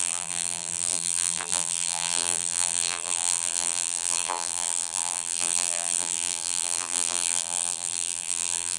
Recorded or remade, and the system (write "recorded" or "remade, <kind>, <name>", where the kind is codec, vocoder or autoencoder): remade, vocoder, BigVGAN v2